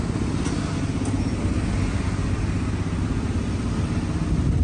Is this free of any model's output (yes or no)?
yes